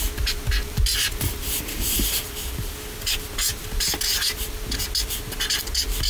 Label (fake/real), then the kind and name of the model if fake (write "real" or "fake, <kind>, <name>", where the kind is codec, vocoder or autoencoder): real